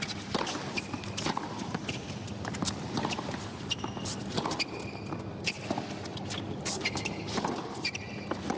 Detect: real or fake real